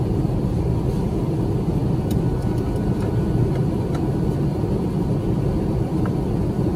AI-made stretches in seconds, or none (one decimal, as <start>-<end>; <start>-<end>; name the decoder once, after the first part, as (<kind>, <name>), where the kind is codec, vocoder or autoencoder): none